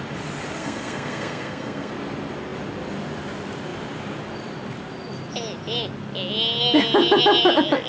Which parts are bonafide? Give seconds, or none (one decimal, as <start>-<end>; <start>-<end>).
0.0-0.6; 1.9-7.9